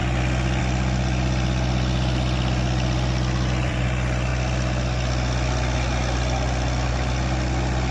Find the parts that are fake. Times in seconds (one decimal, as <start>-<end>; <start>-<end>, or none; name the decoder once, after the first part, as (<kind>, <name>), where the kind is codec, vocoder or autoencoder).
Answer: 0.6-4.3 (vocoder, BigVGAN v2); 6.9-7.9